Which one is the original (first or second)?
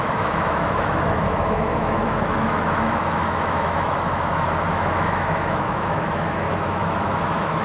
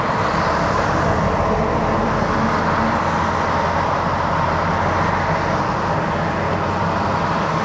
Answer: second